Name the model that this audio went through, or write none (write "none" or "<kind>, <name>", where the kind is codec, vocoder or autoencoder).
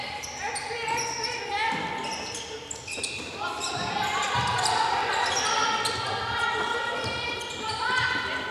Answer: none